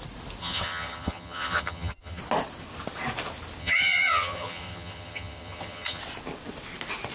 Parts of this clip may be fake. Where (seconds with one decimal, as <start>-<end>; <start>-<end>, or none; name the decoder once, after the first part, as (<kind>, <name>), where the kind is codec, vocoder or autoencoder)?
0.4-2.2 (vocoder, HiFi-GAN); 3.6-6.0